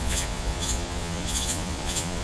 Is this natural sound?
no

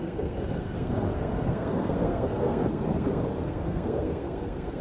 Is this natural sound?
no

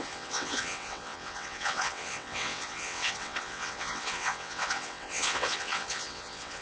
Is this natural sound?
no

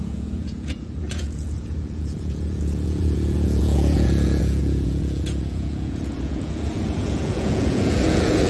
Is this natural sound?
no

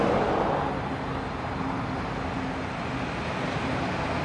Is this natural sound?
yes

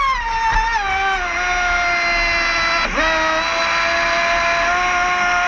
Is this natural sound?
yes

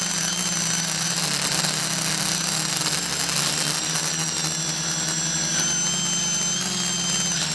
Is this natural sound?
yes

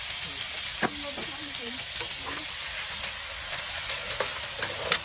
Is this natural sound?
yes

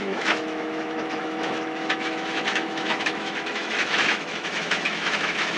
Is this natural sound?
no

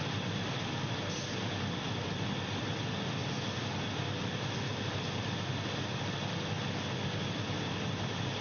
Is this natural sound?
yes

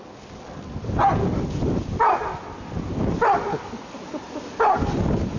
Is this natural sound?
yes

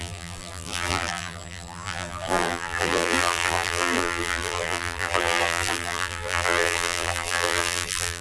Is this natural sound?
no